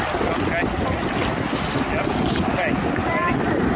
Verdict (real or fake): real